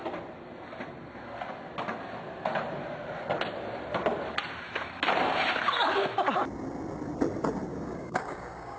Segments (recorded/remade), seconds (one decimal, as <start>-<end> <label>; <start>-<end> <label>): 0.0-7.7 recorded; 7.7-8.8 remade